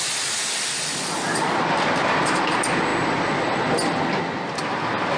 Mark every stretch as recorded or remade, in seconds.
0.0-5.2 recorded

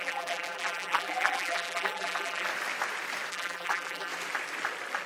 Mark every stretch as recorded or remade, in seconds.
0.0-2.5 remade; 2.5-3.3 recorded; 3.3-4.1 remade; 4.1-5.1 recorded

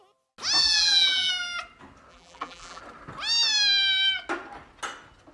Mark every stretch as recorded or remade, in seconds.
0.0-0.6 recorded; 0.6-1.3 remade; 1.3-2.1 recorded; 2.1-2.8 remade; 2.8-5.3 recorded

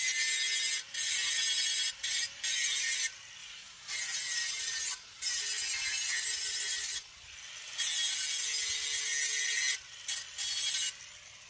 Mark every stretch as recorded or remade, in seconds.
0.0-1.7 recorded; 1.7-2.5 remade; 2.5-3.4 recorded; 3.4-7.1 remade; 7.1-11.5 recorded

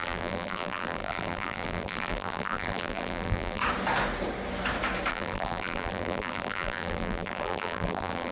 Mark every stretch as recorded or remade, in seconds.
0.0-3.6 remade; 3.6-5.1 recorded; 5.1-8.3 remade

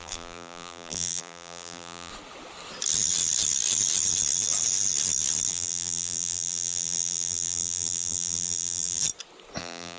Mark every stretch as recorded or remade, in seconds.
0.0-2.1 remade; 2.1-5.5 recorded; 5.5-9.0 remade; 9.0-9.6 recorded; 9.6-10.0 remade

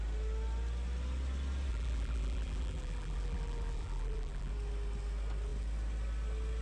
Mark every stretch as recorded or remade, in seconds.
0.0-1.7 recorded; 1.7-4.5 remade; 4.5-6.6 recorded